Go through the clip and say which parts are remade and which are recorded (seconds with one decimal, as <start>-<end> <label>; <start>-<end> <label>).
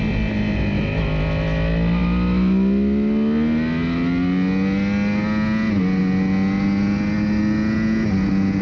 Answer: 0.0-8.6 recorded